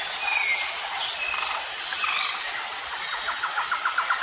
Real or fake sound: real